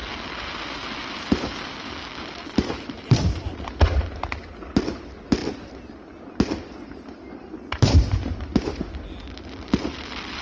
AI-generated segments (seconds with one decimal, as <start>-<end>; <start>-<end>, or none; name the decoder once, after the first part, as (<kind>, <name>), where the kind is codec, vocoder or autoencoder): none